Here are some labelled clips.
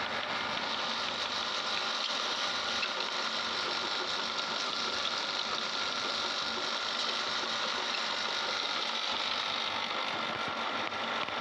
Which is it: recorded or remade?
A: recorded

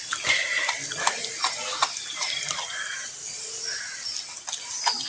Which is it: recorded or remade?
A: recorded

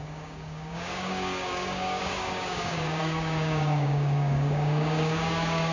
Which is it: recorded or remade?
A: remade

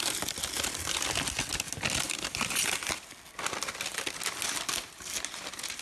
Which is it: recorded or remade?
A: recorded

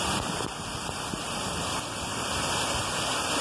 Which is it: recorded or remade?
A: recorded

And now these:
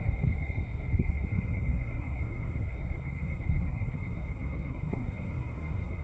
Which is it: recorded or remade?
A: remade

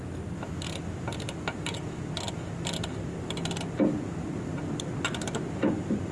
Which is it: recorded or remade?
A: recorded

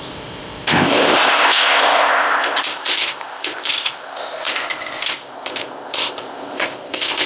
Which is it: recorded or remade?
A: remade